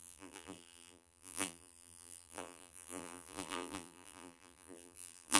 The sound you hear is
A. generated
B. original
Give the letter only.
A